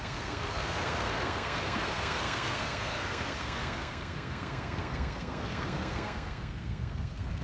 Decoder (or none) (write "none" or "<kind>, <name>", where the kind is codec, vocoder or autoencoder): codec, SNAC